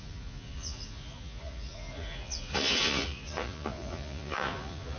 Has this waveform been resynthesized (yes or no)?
yes